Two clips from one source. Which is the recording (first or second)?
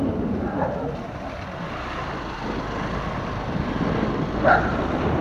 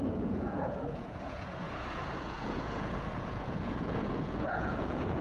first